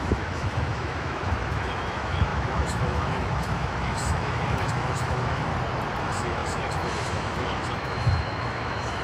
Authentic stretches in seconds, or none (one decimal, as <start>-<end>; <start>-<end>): 5.5-6.0